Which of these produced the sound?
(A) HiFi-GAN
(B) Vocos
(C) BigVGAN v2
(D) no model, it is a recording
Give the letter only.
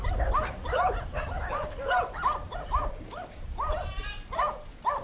C